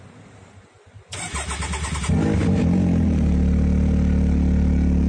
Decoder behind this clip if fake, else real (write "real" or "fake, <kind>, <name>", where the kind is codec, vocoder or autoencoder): real